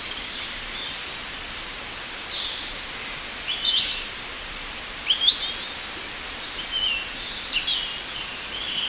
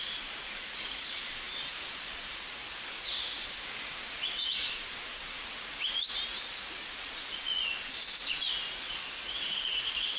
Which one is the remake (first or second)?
second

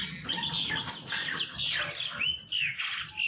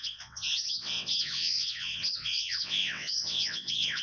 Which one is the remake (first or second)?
second